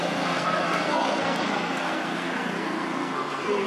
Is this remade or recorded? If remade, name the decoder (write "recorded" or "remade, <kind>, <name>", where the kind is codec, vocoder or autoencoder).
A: remade, codec, SNAC